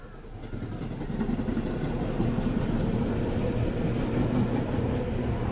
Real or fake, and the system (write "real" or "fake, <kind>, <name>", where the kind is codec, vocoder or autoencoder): real